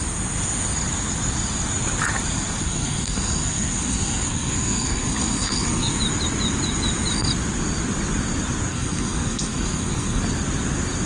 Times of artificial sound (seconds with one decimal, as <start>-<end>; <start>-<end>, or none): 2.6-6.0; 8.7-10.2